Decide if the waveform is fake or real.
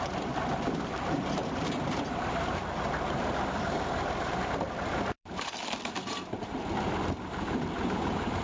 fake